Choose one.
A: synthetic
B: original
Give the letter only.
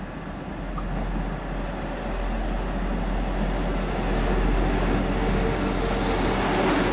B